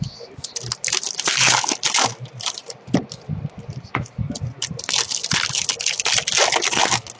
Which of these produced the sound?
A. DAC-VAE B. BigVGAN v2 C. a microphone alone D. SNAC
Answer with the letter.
C